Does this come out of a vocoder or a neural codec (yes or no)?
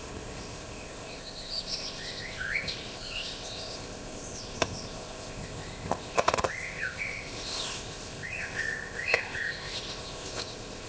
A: yes